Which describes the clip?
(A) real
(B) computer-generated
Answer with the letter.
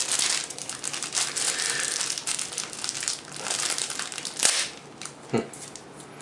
A